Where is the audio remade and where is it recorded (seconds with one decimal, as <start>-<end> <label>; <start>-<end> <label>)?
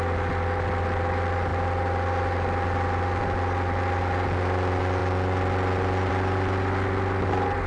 0.0-7.7 recorded